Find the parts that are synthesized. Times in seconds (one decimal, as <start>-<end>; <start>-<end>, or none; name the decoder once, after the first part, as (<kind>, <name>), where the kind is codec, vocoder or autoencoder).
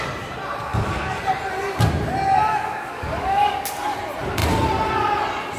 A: 0.7-1.2 (codec, DAC); 2.5-3.7